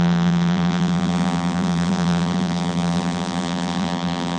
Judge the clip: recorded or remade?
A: remade